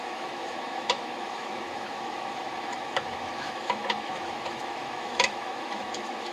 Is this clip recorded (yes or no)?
no